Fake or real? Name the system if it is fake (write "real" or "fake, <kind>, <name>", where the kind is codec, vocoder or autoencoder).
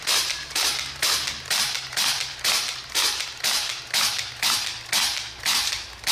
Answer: fake, vocoder, BigVGAN v2